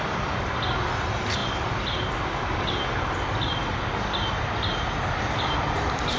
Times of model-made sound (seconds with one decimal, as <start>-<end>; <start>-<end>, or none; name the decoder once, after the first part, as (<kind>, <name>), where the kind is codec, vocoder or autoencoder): 0.0-1.4 (vocoder, BigVGAN v2); 5.1-6.2